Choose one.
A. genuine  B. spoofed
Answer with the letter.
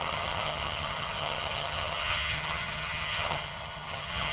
B